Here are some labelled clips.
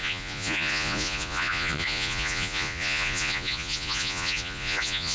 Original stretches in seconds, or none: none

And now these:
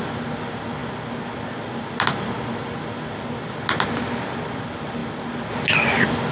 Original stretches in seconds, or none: 0.0-6.3

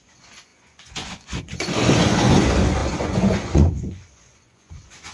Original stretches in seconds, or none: none

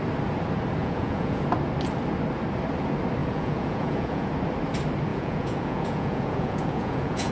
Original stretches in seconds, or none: 0.0-0.8; 1.4-3.2; 4.3-5.1

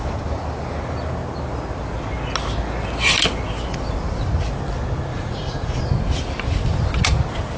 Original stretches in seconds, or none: 0.0-5.1; 5.8-7.6